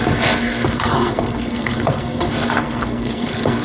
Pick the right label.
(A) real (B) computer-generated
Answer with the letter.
B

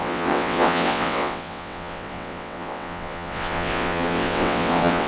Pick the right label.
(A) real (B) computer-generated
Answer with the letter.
B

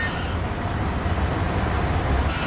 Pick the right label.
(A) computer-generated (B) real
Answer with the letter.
B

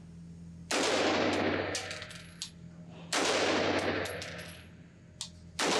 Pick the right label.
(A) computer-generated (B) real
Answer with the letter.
B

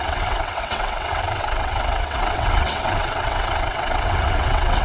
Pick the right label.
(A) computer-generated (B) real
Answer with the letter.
A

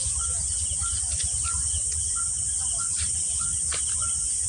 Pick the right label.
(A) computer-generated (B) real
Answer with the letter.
B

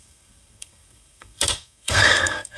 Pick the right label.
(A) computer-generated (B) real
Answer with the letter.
A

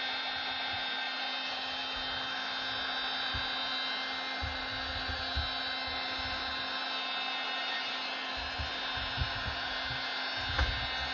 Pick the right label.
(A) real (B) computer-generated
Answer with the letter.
A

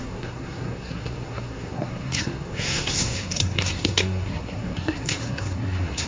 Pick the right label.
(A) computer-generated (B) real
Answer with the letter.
A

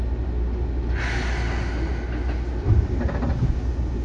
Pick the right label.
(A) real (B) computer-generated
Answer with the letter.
A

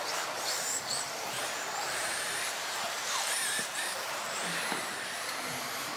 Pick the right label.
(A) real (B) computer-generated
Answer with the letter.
B